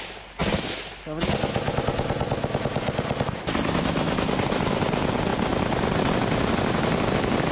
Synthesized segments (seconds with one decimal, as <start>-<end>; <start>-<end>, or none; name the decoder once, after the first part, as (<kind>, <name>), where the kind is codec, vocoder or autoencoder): none